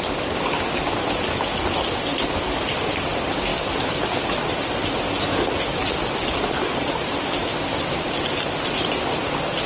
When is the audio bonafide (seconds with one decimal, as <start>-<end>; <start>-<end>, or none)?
0.0-5.8; 8.1-9.7

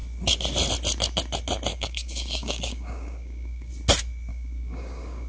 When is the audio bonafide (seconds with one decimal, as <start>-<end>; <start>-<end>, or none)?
0.0-1.7; 3.7-4.3

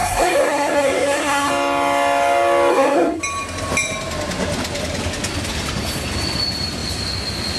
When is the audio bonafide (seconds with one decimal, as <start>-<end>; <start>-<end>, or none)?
1.5-2.7; 3.2-7.6

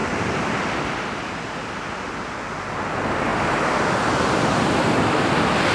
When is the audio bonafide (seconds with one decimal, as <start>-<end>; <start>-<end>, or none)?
0.6-3.3; 5.3-5.7

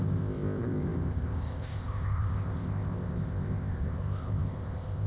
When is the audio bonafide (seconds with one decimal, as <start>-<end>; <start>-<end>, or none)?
none